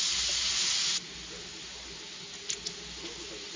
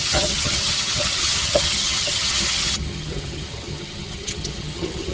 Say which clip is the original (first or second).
first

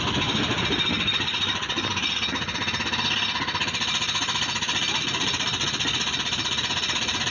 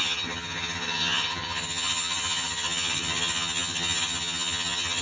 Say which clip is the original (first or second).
first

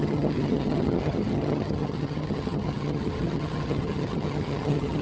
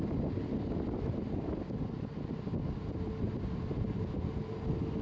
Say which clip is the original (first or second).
second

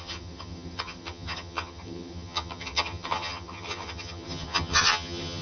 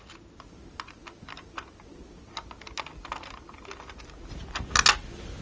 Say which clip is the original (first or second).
second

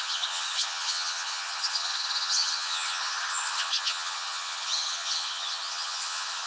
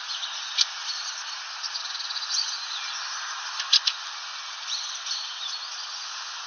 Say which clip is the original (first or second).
second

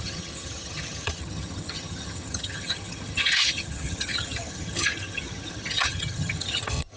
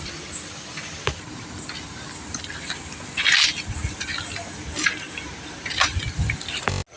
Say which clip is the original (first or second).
second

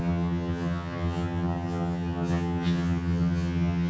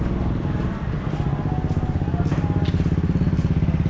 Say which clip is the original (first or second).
second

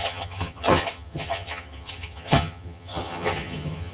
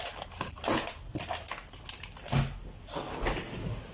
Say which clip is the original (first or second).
second